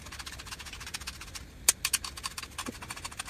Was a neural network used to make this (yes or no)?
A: no